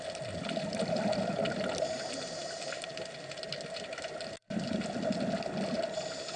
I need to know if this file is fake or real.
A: real